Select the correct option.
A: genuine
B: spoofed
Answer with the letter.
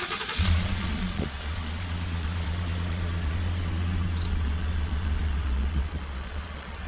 B